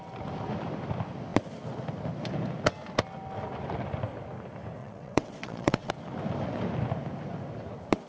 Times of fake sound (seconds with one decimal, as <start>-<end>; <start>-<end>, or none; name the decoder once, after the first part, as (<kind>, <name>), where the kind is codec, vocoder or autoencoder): 4.8-5.9 (vocoder, WaveNeXt)